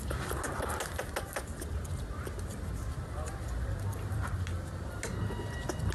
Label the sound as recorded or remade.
recorded